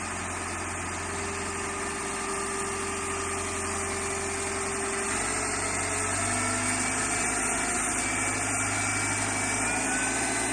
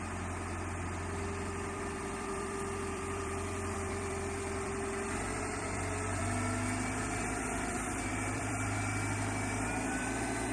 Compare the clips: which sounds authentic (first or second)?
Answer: first